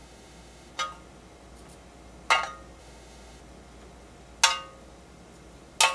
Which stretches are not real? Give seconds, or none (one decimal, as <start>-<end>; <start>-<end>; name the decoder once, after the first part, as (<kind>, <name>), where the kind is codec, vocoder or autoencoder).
0.0-0.7 (autoencoder, DAC-VAE); 2.8-3.4

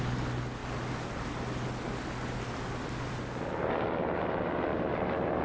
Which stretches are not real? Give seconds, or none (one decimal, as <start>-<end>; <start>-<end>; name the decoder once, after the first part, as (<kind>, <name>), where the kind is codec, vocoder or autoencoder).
none

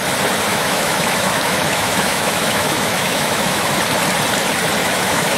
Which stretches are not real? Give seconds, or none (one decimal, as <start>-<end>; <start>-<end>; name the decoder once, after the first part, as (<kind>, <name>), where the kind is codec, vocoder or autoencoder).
0.5-3.7 (autoencoder, DAC-VAE); 4.8-5.4

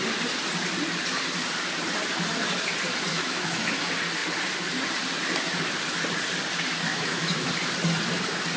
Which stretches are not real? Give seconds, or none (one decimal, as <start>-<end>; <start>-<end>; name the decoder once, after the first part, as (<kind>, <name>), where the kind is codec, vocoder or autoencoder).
3.1-3.7 (autoencoder, DAC-VAE); 6.9-7.5

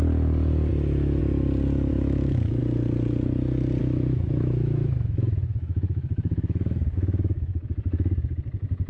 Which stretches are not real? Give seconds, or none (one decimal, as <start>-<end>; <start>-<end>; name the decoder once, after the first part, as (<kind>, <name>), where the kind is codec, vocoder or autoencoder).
1.9-2.6 (autoencoder, DAC-VAE); 3.8-7.7

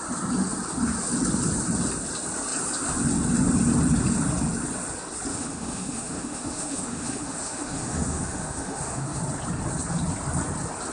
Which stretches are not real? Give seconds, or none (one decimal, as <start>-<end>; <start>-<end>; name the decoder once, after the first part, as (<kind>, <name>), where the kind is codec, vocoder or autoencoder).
5.3-9.2 (autoencoder, DAC-VAE)

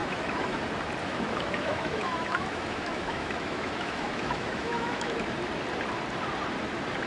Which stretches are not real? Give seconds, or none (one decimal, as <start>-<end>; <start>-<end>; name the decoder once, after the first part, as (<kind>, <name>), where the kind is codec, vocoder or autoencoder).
0.0-0.6 (autoencoder, DAC-VAE); 1.0-5.3